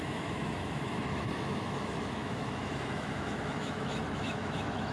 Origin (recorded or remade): remade